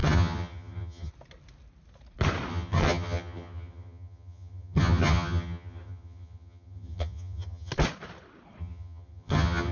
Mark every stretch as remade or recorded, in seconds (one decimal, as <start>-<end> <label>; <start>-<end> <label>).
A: 0.0-1.1 remade; 1.1-2.5 recorded; 2.5-7.7 remade; 7.7-8.6 recorded; 8.6-9.7 remade